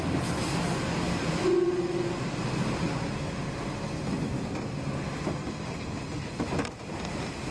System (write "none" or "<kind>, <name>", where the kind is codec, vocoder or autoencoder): none